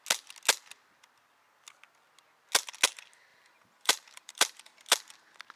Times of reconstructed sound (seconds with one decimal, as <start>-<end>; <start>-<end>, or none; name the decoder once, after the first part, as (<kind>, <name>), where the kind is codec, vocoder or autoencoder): 3.3-4.6 (vocoder, BigVGAN v2)